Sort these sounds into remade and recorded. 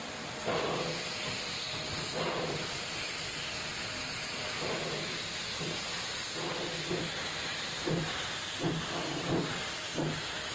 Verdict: remade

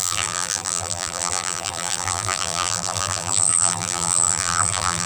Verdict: remade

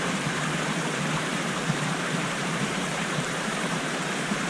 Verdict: remade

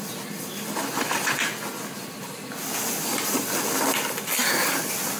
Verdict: recorded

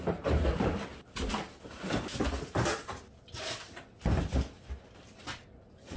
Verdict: recorded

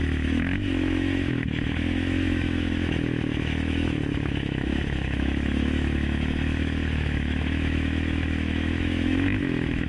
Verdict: remade